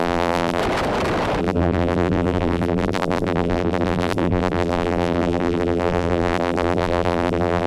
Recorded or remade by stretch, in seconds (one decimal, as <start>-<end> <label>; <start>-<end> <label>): 0.0-0.6 remade; 0.6-1.4 recorded; 1.4-7.7 remade